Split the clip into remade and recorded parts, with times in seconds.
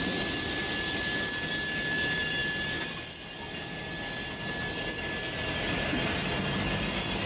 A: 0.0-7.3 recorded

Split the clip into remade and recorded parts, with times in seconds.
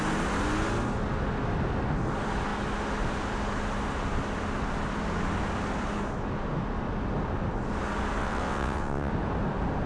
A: 0.0-8.2 recorded; 8.2-9.1 remade; 9.1-9.9 recorded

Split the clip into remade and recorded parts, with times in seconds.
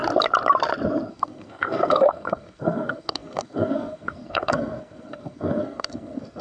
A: 0.0-1.1 recorded; 1.1-6.4 remade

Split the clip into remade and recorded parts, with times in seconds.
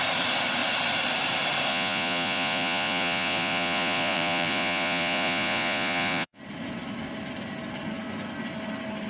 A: 0.0-1.7 recorded; 1.7-6.4 remade; 6.4-9.1 recorded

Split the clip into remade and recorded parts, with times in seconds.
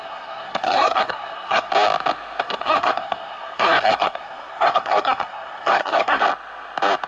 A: 0.0-1.7 remade; 1.7-2.4 recorded; 2.4-6.2 remade; 6.2-7.1 recorded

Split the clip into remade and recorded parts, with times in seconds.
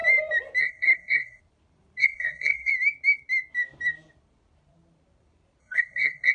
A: 0.0-0.6 recorded; 0.6-1.4 remade; 1.4-2.0 recorded; 2.0-2.7 remade; 2.7-5.6 recorded; 5.6-6.3 remade